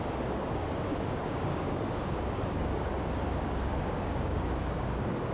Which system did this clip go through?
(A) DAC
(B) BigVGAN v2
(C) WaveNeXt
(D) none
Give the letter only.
A